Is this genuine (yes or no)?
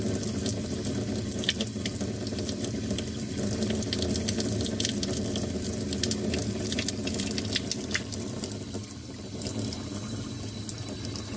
yes